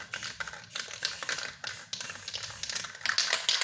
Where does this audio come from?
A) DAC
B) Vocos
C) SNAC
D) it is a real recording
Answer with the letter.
D